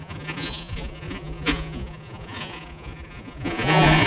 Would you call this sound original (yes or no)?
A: no